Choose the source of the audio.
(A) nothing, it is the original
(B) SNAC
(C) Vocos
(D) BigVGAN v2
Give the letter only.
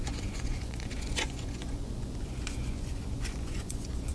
C